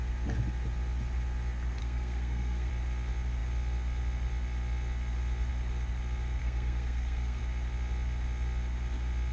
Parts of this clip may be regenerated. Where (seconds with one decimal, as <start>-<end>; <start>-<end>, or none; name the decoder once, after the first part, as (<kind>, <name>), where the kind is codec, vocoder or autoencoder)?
1.8-2.7 (codec, SNAC); 6.4-7.4